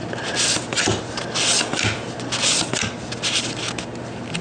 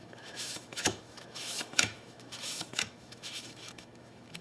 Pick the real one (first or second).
first